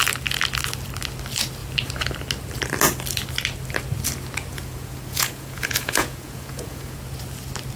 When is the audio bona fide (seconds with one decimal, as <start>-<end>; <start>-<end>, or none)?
0.0-4.5; 7.0-7.8